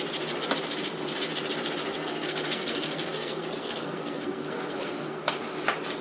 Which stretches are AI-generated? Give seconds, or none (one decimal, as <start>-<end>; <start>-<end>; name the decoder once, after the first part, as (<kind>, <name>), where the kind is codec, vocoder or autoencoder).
1.9-5.4 (codec, SNAC)